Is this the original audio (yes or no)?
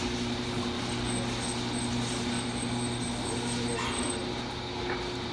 yes